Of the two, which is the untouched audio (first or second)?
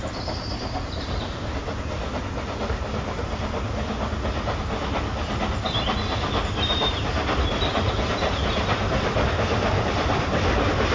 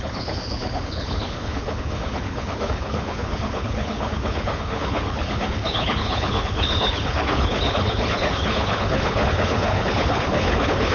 first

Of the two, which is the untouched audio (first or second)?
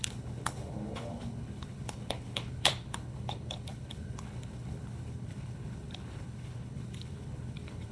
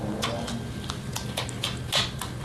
second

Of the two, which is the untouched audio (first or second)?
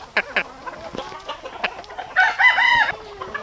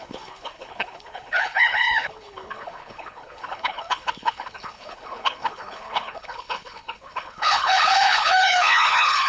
first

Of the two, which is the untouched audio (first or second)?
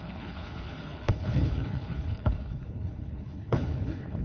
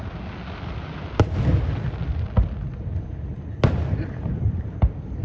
second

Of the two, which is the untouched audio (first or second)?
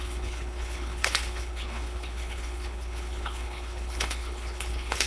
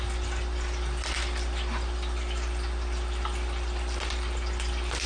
second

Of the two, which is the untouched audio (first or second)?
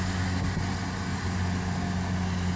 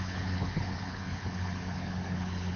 first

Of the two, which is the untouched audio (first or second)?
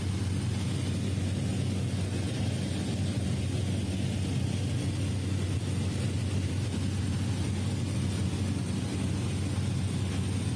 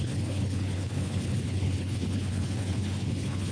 first